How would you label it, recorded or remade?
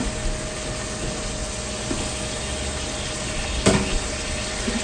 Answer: recorded